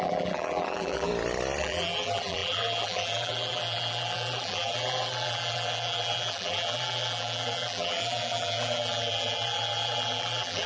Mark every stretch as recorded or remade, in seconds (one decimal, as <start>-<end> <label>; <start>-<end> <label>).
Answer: 0.0-1.1 remade; 1.1-1.6 recorded; 1.6-10.7 remade

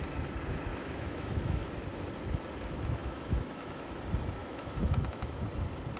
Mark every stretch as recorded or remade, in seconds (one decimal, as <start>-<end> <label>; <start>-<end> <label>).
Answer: 0.0-0.7 recorded; 0.7-1.6 remade; 1.6-3.0 recorded; 3.0-4.0 remade; 4.0-4.4 recorded; 4.4-5.4 remade; 5.4-6.0 recorded

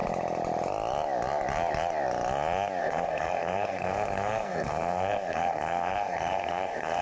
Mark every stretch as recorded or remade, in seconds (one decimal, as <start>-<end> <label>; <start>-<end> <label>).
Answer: 0.0-2.8 recorded; 2.8-7.0 remade

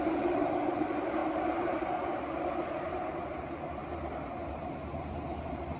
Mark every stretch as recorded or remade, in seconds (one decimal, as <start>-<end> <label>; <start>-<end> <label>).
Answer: 0.0-3.8 remade; 3.8-4.5 recorded; 4.5-5.8 remade

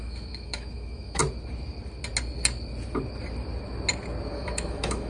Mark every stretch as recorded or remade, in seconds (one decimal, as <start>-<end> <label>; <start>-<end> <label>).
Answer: 0.0-1.2 remade; 1.2-4.3 recorded; 4.3-5.1 remade

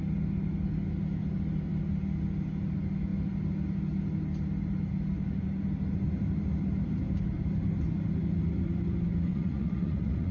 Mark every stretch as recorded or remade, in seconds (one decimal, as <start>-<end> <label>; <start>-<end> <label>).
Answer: 0.0-9.3 recorded; 9.3-10.3 remade